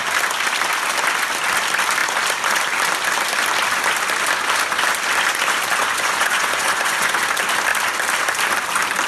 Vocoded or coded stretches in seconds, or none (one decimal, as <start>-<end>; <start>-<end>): 5.8-7.2